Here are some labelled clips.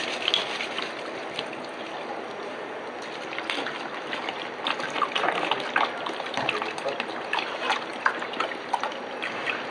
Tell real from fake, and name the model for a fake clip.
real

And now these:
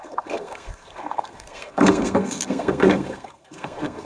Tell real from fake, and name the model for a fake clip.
fake, codec, SNAC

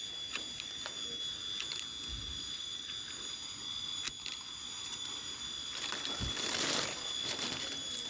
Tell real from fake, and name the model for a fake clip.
real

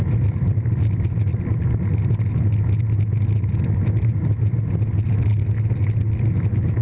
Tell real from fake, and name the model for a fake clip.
real